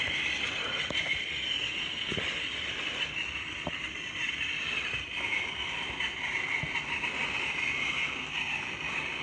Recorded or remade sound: recorded